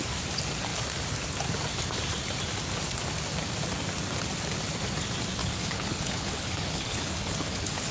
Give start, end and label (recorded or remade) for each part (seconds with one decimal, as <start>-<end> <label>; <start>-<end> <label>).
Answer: 0.0-5.4 recorded; 5.4-7.9 remade

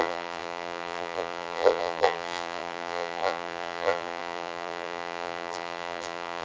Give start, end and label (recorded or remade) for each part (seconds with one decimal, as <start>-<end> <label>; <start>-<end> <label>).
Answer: 0.0-6.4 remade